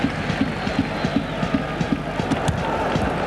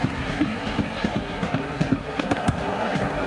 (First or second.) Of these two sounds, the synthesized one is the second